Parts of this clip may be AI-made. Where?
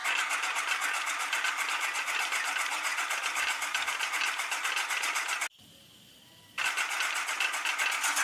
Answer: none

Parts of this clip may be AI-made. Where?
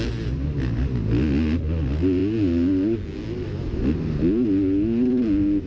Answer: none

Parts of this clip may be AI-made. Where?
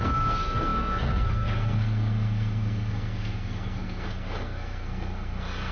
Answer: 0.0-5.7 (codec, SNAC)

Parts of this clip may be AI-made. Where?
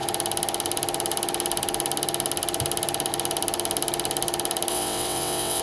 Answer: 4.7-5.6 (vocoder, WaveNeXt)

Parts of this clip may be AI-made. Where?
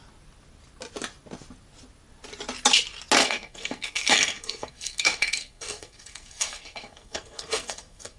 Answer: 3.2-8.2 (codec, SNAC)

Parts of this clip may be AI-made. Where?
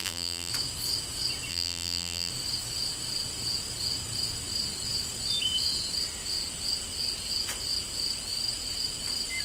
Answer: 0.0-0.5 (vocoder, BigVGAN v2); 1.5-2.3